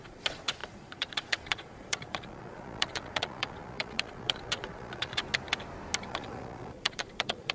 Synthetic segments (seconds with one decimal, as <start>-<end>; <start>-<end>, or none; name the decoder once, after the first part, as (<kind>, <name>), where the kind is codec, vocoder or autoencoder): 0.0-5.2 (vocoder, Vocos); 6.1-7.5